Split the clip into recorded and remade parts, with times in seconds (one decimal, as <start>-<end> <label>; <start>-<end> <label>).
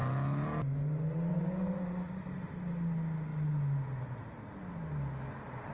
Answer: 0.0-5.7 recorded